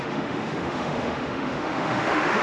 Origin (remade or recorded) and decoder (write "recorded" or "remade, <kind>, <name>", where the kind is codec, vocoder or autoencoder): remade, autoencoder, DAC-VAE